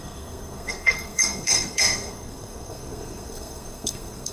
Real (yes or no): no